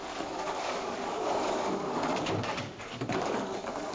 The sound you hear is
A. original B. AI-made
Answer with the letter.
B